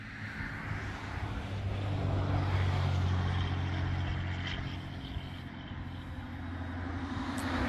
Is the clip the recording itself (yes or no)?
yes